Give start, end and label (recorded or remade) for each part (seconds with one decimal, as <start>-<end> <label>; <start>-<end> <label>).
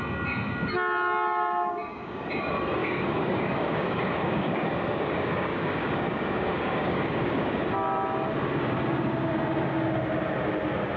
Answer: 0.0-1.8 recorded; 1.8-2.4 remade; 2.4-2.8 recorded; 2.8-7.6 remade; 7.6-11.0 recorded